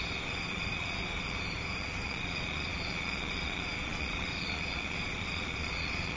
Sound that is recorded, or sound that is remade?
remade